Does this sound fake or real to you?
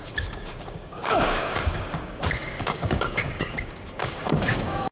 fake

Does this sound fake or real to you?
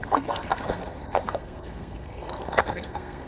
fake